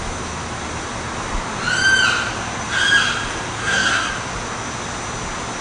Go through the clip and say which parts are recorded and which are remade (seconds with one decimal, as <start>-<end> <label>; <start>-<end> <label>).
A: 0.0-3.6 recorded; 3.6-4.1 remade; 4.1-5.6 recorded